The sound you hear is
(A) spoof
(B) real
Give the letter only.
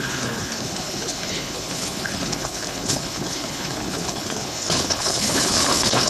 A